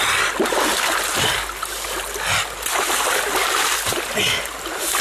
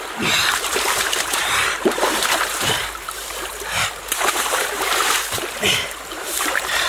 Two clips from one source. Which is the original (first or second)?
first